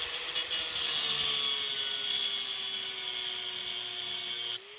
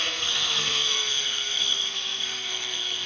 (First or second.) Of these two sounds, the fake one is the second